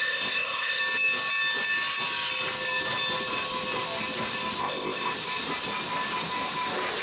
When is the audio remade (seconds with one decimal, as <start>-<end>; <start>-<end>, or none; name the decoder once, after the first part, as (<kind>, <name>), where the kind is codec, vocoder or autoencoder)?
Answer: 0.0-0.8 (codec, ZipCodec); 4.6-5.1